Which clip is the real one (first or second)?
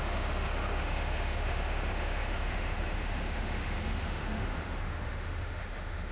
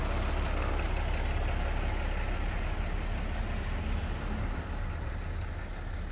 second